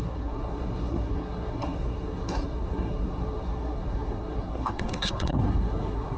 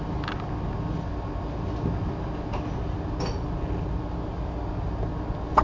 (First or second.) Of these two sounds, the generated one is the first